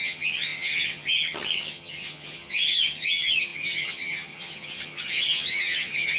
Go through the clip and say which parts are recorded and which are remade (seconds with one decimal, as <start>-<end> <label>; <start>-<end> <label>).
0.0-6.2 remade